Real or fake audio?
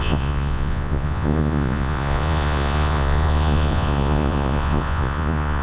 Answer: fake